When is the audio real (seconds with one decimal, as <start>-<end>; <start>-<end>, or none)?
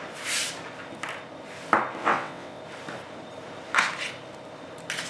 0.0-2.0; 2.6-5.1